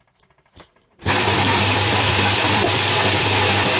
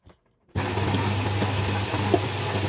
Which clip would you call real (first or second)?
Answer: second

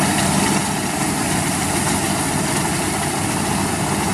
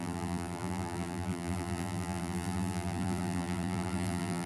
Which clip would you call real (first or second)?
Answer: first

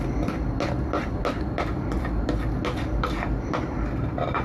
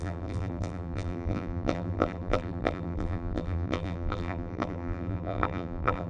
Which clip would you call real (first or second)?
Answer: first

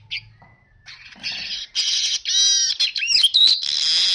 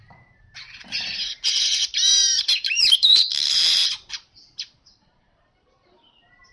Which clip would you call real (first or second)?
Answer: first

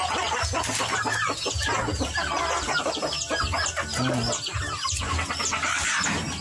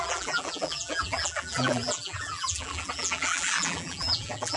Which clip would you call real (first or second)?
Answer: first